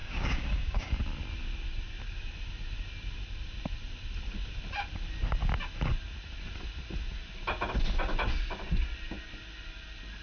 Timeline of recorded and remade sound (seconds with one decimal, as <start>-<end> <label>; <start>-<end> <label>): 0.0-0.9 remade; 0.9-10.2 recorded